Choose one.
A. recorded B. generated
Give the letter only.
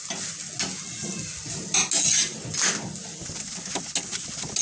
A